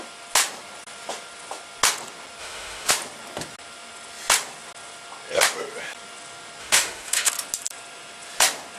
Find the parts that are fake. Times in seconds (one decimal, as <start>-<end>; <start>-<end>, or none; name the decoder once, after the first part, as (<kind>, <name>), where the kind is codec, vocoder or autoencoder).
2.4-2.9 (autoencoder, DAC-VAE); 6.6-7.3